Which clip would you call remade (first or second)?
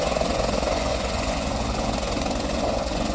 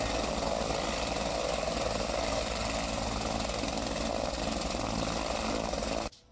first